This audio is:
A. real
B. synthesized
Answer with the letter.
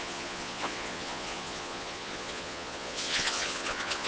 B